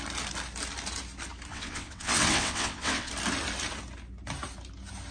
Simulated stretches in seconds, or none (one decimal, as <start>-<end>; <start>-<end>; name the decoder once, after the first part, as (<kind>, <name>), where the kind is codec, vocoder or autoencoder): 1.5-3.1 (vocoder, WaveNeXt)